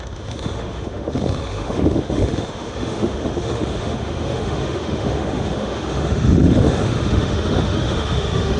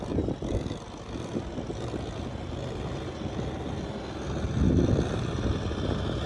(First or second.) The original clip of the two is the second